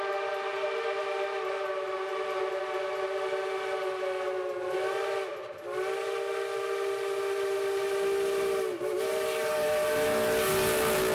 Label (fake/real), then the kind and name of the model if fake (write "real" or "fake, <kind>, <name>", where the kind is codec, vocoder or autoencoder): real